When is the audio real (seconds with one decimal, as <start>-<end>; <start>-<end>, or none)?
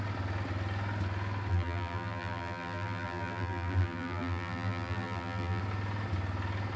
0.0-1.5; 5.6-6.8